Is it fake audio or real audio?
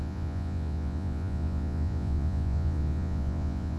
fake